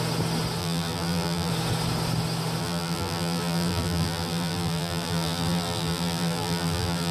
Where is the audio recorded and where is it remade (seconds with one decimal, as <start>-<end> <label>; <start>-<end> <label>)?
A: 0.0-0.6 recorded; 0.6-1.5 remade; 1.5-2.6 recorded; 2.6-7.1 remade